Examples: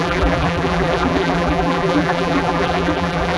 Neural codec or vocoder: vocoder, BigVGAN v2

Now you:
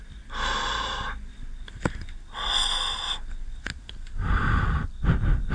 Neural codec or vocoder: none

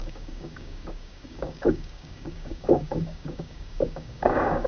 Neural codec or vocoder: codec, DAC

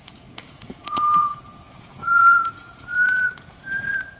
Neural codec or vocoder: vocoder, Vocos